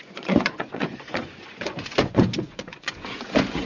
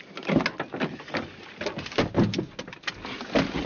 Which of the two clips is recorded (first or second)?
second